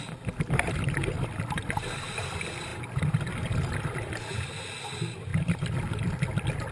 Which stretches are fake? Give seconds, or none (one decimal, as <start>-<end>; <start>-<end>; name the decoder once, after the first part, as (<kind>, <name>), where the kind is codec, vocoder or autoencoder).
none